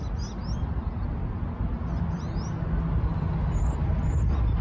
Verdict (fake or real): real